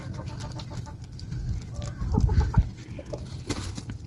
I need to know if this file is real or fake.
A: real